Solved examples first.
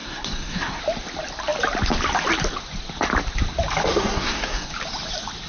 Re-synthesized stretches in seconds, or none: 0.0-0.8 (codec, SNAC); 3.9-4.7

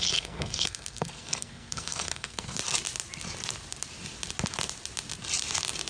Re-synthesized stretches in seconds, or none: 0.0-2.6 (codec, SNAC)

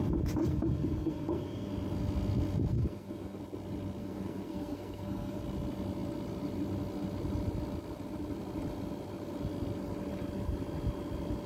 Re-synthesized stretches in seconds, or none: 0.4-1.7 (codec, SNAC); 2.7-3.4; 4.0-5.4

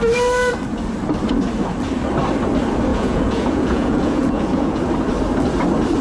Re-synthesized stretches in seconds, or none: 2.9-4.8 (vocoder, Vocos)

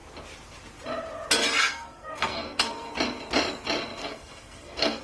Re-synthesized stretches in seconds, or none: 1.6-2.9 (codec, SNAC); 4.0-5.0

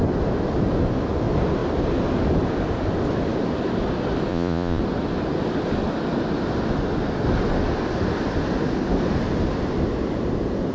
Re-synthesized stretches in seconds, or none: 4.3-4.8 (vocoder, Vocos)

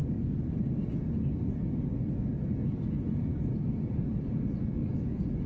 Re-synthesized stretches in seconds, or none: none